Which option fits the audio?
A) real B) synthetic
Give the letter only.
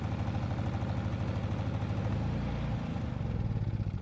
A